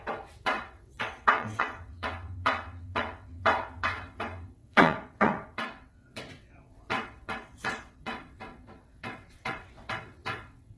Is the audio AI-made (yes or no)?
yes